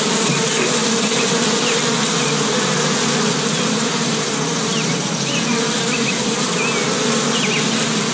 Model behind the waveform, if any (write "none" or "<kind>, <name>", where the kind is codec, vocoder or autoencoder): none